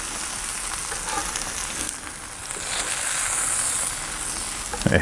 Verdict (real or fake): real